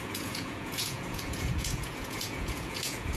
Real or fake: fake